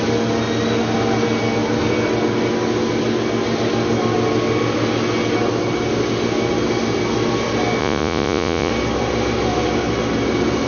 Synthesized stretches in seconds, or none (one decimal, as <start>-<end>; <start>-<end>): 7.8-8.7